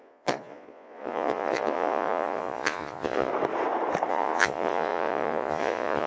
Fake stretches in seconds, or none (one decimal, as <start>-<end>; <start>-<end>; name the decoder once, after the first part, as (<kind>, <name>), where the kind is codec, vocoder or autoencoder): 0.0-3.3 (vocoder, Vocos); 4.1-6.1